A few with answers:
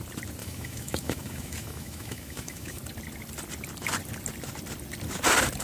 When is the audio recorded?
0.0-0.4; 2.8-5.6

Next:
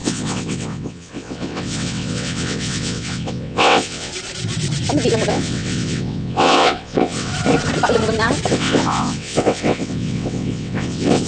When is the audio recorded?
4.1-5.3; 7.3-8.5

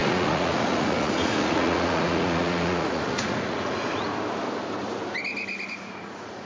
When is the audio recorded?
4.1-5.7

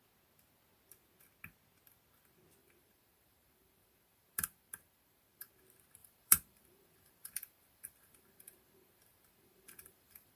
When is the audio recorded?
0.0-2.6; 5.6-6.0

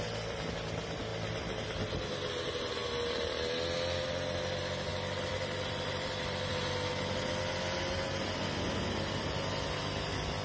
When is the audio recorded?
0.0-4.9; 6.5-10.4